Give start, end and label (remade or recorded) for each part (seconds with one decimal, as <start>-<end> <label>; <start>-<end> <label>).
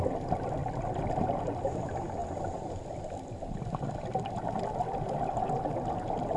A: 0.0-6.4 recorded